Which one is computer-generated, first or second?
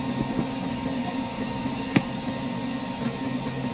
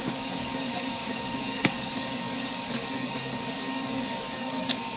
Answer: second